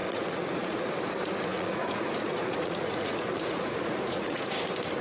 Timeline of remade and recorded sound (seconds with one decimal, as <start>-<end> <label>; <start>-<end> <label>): 0.0-0.9 remade; 0.9-1.5 recorded; 1.5-4.5 remade; 4.5-5.0 recorded